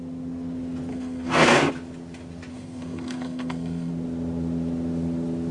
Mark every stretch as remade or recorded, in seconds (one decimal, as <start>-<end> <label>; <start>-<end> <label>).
0.0-0.9 recorded; 0.9-1.7 remade; 1.7-2.5 recorded; 2.5-3.9 remade; 3.9-5.5 recorded